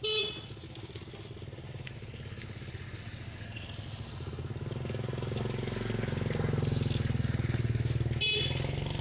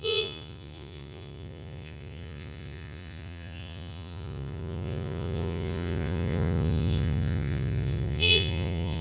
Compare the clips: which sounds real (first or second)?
first